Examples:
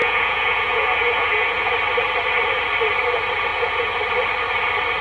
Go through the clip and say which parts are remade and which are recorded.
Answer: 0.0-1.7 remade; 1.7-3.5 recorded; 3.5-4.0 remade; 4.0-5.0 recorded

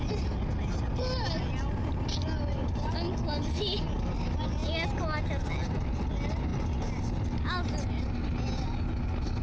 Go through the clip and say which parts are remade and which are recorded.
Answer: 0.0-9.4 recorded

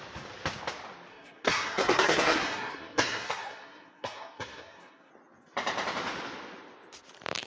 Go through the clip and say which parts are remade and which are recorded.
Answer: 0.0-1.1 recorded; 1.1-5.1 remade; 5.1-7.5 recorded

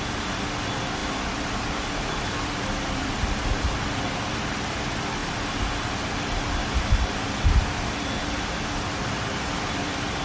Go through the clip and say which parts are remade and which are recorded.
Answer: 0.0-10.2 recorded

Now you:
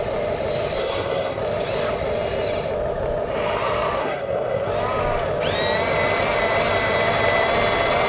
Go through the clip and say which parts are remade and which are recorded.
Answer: 0.0-0.8 recorded; 0.8-1.4 remade; 1.4-4.0 recorded; 4.0-4.7 remade; 4.7-8.1 recorded

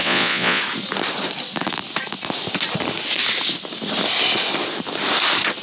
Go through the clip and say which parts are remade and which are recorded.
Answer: 0.0-0.6 remade; 0.6-5.6 recorded